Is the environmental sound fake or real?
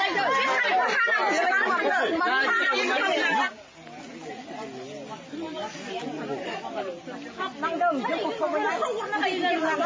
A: real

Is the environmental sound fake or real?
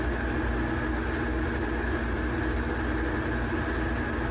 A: real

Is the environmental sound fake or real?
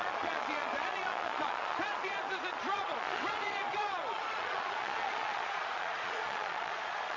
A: fake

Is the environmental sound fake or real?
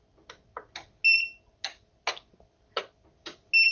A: real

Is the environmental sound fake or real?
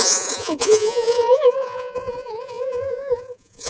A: fake